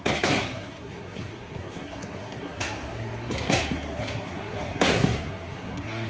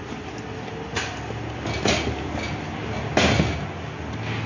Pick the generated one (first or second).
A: first